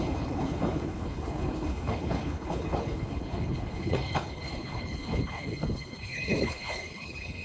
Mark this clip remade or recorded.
remade